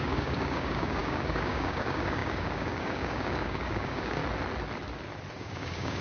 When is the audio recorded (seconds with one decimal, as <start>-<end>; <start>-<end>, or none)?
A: 4.2-5.4